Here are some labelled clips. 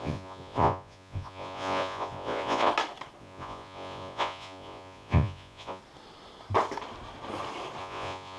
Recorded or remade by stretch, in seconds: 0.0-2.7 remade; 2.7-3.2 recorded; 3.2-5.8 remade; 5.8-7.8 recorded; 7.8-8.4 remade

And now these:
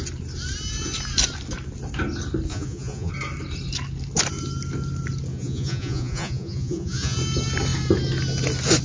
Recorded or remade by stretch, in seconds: 0.0-2.5 recorded; 2.5-3.1 remade; 3.1-5.3 recorded; 5.3-7.2 remade; 7.2-8.8 recorded

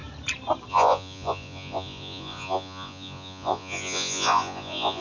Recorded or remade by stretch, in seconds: 0.0-0.7 recorded; 0.7-5.0 remade